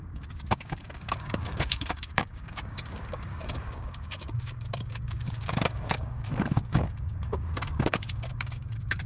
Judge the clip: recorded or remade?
remade